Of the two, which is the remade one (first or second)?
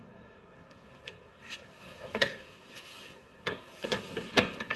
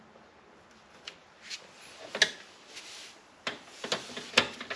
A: first